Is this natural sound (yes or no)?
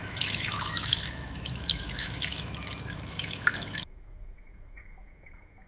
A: no